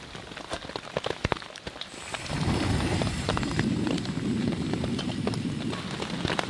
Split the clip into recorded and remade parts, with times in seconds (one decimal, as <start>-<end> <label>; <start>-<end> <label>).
0.0-1.2 recorded; 1.2-5.1 remade; 5.1-6.5 recorded